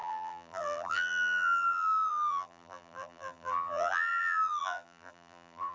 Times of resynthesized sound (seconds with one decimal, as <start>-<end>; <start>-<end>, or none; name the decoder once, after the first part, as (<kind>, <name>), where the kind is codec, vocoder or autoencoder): 0.0-5.7 (vocoder, BigVGAN v2)